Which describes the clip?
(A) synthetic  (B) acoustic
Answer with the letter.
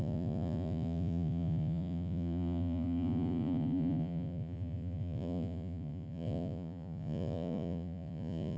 A